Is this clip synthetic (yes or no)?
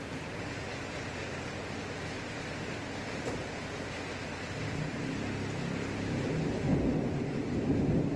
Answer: no